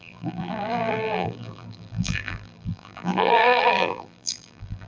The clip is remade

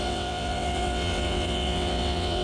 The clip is remade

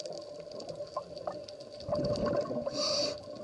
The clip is recorded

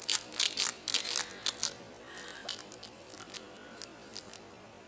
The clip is recorded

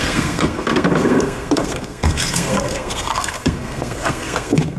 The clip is remade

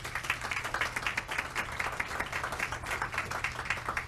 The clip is remade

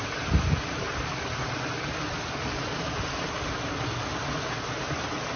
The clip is recorded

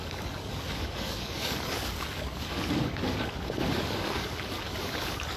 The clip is remade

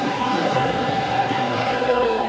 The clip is remade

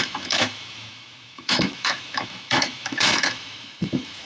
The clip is remade